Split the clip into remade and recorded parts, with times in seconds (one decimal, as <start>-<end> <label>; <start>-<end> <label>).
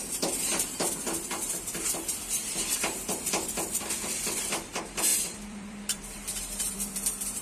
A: 0.0-7.4 remade